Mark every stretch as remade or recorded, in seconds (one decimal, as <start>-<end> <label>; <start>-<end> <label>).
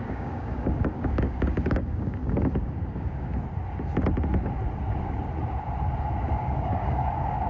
0.0-3.3 remade; 3.3-6.3 recorded; 6.3-7.5 remade